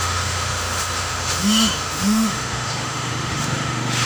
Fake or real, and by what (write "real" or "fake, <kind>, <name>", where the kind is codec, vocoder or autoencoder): fake, autoencoder, DAC-VAE